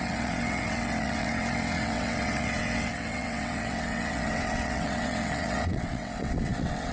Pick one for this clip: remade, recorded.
remade